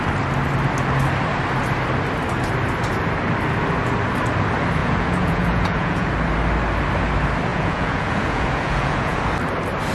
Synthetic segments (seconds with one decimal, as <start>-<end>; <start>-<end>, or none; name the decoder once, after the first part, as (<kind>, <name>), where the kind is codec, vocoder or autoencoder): 4.8-6.1 (vocoder, Vocos); 7.5-9.2